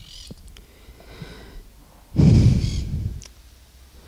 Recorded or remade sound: recorded